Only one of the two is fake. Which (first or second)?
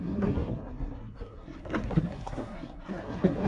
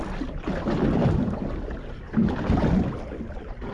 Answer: first